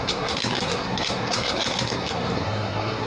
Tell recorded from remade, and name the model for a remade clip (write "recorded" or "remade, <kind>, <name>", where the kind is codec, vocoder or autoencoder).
remade, codec, SNAC